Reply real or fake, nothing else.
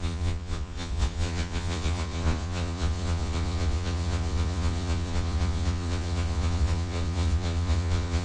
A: fake